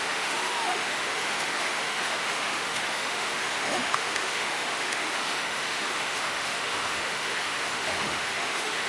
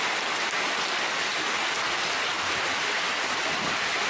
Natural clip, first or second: second